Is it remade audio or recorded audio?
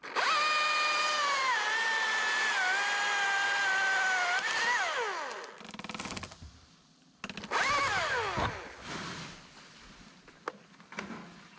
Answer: recorded